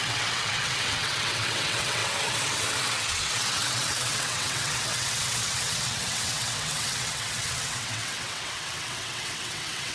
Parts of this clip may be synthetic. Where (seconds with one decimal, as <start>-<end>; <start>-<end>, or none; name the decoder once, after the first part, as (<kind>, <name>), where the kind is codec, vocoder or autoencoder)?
0.0-9.9 (vocoder, WaveNeXt)